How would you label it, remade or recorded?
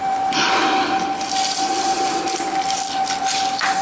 recorded